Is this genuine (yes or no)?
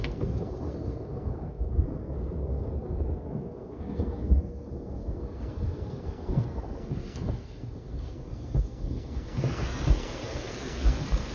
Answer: no